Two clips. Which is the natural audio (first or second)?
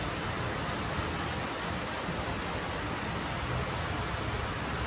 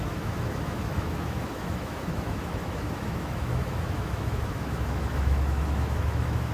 first